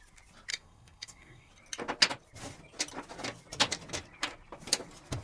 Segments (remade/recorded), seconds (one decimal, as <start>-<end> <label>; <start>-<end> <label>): 0.0-0.5 recorded; 0.5-1.5 remade; 1.5-5.2 recorded